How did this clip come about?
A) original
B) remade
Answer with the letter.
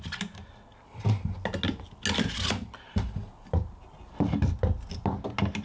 A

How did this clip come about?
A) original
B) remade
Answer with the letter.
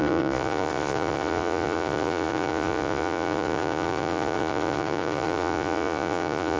B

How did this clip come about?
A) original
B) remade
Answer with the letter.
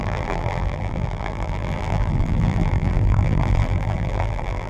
B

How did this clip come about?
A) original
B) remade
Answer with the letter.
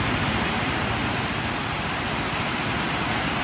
A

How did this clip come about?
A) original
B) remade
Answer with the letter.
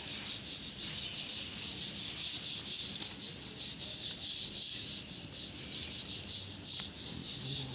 A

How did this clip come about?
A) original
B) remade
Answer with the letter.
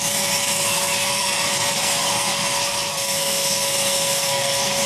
B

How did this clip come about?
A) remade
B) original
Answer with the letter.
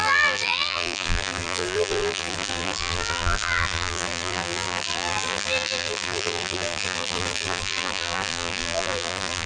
A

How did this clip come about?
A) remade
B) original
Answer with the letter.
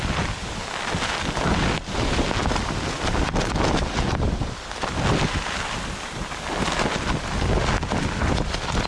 B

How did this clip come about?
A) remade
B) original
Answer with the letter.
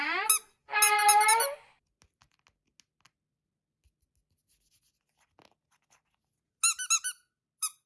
B